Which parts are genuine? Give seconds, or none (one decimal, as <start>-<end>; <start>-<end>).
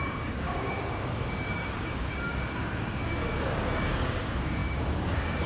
none